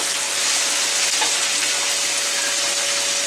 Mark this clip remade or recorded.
recorded